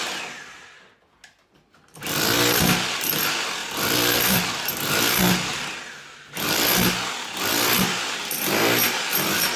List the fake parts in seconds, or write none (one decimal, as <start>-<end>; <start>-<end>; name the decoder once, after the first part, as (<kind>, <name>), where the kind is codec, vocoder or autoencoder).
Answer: 3.6-4.7 (vocoder, BigVGAN v2)